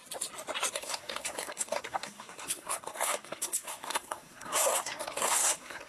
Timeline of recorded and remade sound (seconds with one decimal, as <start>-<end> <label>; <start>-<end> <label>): 0.0-0.7 recorded; 0.7-5.9 remade